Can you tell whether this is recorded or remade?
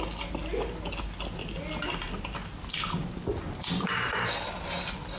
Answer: recorded